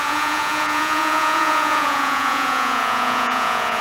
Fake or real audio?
fake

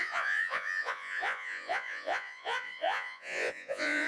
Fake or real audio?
fake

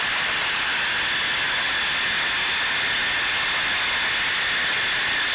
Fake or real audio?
real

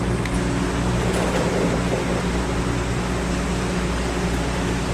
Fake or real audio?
real